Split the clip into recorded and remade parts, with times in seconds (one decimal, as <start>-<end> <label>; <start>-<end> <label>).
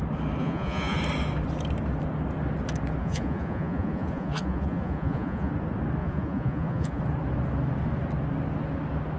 0.0-0.4 recorded; 0.4-1.0 remade; 1.0-3.0 recorded; 3.0-5.5 remade; 5.5-6.0 recorded; 6.0-7.0 remade; 7.0-9.2 recorded